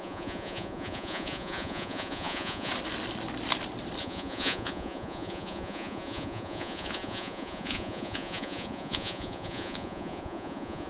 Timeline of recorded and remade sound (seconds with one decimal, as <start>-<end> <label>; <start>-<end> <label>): 0.0-2.7 remade; 2.7-4.0 recorded; 4.0-10.9 remade